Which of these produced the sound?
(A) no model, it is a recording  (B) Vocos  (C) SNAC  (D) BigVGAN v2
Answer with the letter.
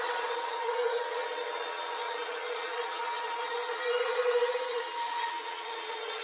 B